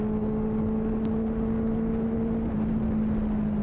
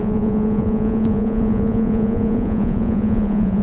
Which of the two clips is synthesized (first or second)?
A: second